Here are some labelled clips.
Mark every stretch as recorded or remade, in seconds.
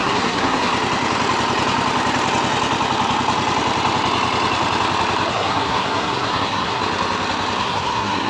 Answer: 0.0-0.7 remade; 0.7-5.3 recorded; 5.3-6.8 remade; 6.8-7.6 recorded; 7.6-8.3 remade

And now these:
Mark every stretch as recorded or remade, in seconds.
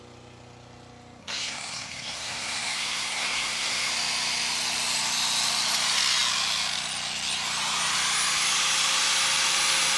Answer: 0.0-1.2 recorded; 1.2-3.9 remade; 3.9-10.0 recorded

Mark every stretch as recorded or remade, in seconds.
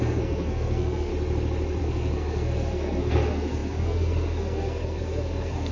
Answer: 0.0-1.1 remade; 1.1-1.8 recorded; 1.8-5.7 remade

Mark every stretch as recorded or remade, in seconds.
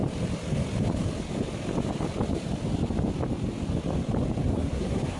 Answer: 0.0-4.5 recorded; 4.5-5.2 remade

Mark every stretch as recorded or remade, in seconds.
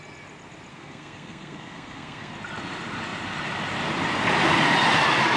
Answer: 0.0-0.7 recorded; 0.7-2.3 remade; 2.3-5.4 recorded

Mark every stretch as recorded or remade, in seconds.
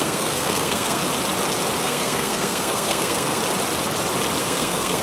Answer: 0.0-1.0 remade; 1.0-1.8 recorded; 1.8-3.4 remade; 3.4-4.4 recorded; 4.4-5.0 remade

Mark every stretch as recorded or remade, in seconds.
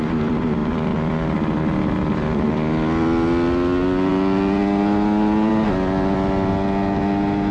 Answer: 0.0-7.5 recorded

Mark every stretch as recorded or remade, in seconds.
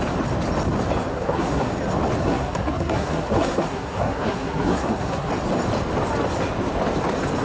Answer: 0.0-1.1 recorded; 1.1-1.7 remade; 1.7-2.2 recorded; 2.2-5.3 remade; 5.3-7.4 recorded